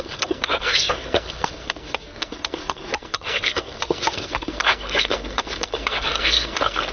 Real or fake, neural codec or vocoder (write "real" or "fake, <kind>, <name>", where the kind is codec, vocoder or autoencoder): fake, codec, SNAC